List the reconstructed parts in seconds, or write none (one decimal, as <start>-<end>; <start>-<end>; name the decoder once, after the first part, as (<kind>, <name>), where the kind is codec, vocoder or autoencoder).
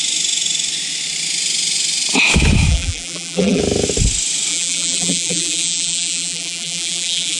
2.7-3.6 (vocoder, BigVGAN v2); 4.5-7.4